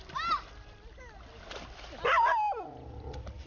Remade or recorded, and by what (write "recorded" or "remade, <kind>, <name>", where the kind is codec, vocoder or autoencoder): recorded